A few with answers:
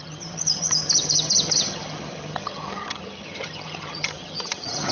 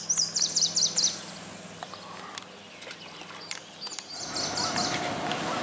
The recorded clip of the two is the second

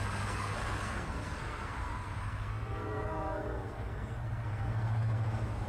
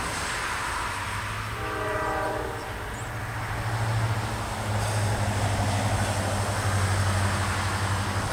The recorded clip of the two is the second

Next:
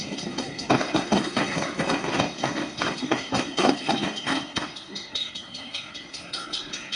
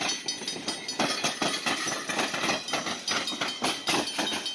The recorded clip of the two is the second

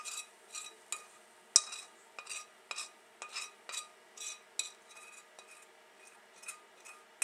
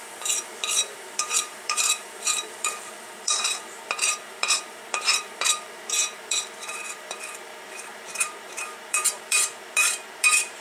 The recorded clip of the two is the first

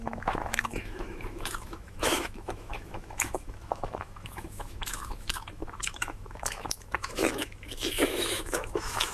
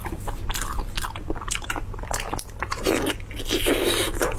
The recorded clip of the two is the second